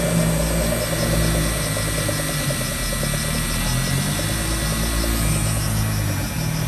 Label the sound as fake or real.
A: real